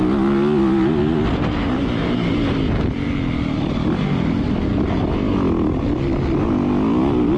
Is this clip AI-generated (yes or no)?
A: no